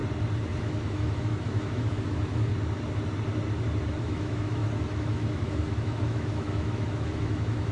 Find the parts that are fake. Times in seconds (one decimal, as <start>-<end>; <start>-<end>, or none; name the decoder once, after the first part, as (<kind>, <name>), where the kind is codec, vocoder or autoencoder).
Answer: 0.6-2.5 (autoencoder, DAC-VAE); 4.0-7.7